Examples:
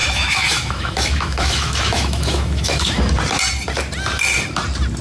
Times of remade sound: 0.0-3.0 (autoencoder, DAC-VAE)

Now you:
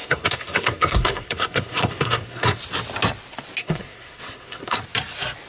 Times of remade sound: 0.0-2.6 (codec, SNAC); 3.6-4.8

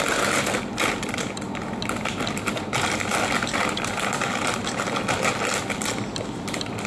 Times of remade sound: none

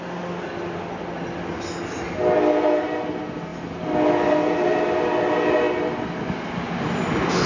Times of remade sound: none